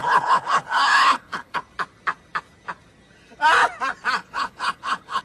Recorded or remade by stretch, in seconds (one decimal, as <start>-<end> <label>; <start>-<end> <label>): 0.0-1.6 remade; 1.6-4.2 recorded; 4.2-5.2 remade